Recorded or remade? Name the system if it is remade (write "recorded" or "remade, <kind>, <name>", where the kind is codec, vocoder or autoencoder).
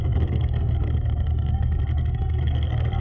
remade, codec, SNAC